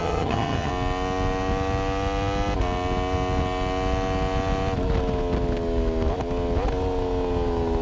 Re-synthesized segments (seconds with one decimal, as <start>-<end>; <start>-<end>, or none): 0.0-0.7

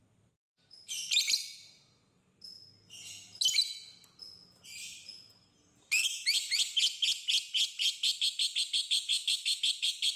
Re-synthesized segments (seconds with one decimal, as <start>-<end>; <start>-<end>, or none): 9.1-9.6

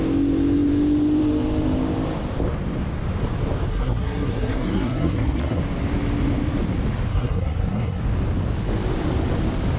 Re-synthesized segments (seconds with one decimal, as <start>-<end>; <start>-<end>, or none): 3.7-5.6; 7.1-8.0